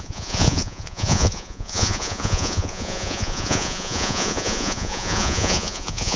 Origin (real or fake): fake